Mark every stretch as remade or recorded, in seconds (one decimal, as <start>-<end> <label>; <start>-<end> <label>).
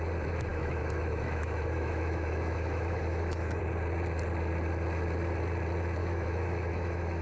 0.0-0.5 recorded; 0.5-3.6 remade; 3.6-6.0 recorded; 6.0-7.2 remade